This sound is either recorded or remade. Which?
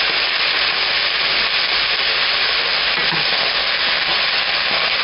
recorded